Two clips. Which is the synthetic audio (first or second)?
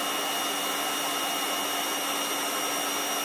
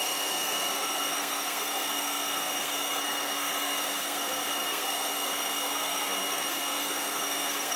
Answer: second